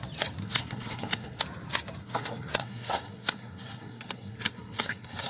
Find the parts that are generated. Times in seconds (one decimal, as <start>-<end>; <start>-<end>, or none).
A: 0.4-1.4; 2.0-5.3